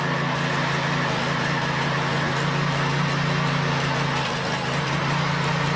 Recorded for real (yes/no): yes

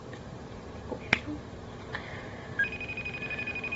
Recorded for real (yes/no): yes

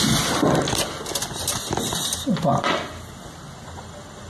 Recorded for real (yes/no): yes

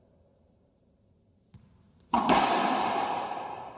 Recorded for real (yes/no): no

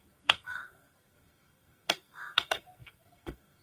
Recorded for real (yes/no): no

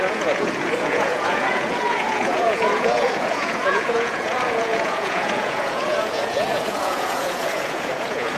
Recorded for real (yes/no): no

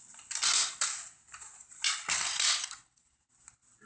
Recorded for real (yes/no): yes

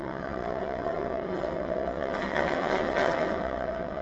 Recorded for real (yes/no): no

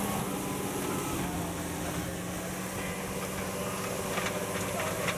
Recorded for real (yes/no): yes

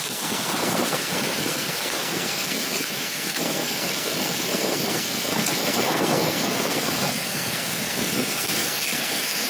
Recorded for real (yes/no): no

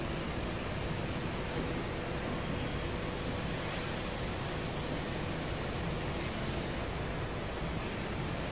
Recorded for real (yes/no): yes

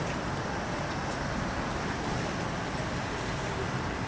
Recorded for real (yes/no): yes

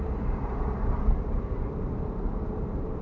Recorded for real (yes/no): no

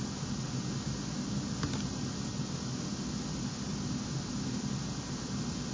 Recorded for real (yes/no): yes